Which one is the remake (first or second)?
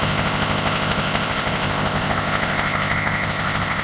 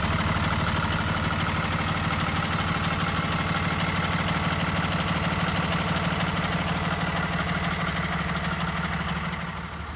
first